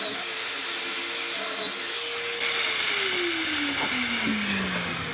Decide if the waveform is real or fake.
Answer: real